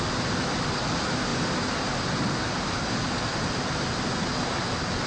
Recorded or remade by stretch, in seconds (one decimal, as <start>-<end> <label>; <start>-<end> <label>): 0.0-1.3 recorded; 1.3-2.3 remade; 2.3-3.3 recorded; 3.3-4.2 remade; 4.2-5.1 recorded